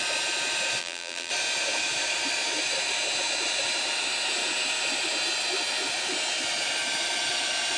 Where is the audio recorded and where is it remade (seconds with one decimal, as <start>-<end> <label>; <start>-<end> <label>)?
0.0-0.8 recorded; 0.8-1.3 remade; 1.3-7.8 recorded